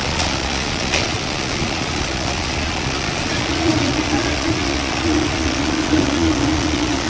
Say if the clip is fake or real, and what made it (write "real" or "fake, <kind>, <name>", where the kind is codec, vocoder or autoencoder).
fake, vocoder, Vocos